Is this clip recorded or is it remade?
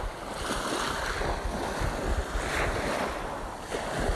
recorded